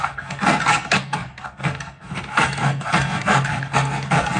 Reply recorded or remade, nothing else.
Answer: remade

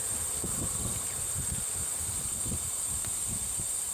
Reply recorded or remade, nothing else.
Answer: remade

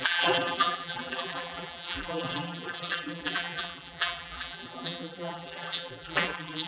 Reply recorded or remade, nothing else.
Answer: remade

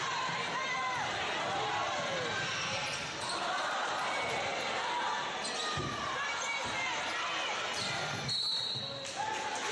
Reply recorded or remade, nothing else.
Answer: recorded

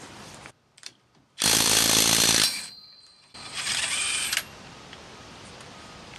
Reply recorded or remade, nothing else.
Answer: remade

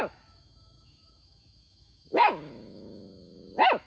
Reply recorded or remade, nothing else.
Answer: remade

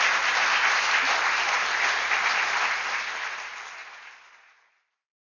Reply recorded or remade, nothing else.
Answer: recorded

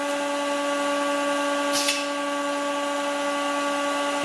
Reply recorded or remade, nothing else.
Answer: recorded